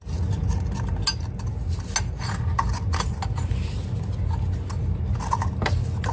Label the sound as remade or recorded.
recorded